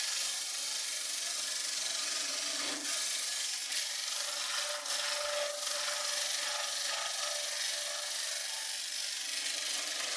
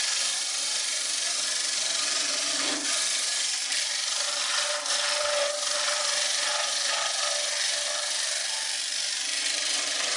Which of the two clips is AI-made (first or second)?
second